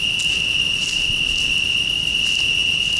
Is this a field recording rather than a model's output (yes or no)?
yes